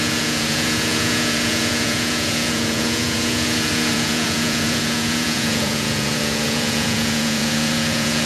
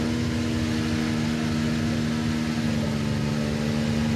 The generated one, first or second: first